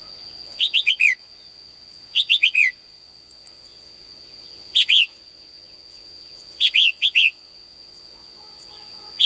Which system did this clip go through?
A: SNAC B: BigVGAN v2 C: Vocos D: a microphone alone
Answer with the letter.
C